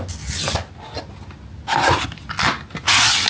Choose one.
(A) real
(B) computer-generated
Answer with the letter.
A